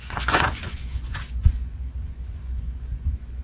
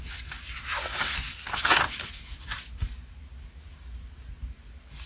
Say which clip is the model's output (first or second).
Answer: first